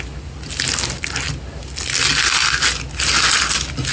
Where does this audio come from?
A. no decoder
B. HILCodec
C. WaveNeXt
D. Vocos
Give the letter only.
A